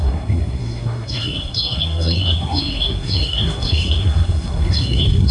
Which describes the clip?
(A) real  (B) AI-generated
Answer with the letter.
B